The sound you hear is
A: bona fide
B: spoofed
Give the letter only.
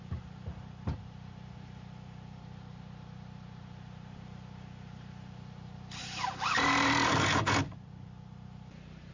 B